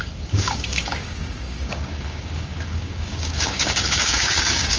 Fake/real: fake